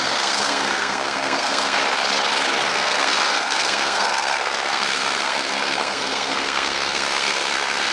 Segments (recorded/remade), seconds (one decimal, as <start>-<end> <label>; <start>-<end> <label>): 0.0-1.8 remade; 1.8-2.7 recorded; 2.7-7.9 remade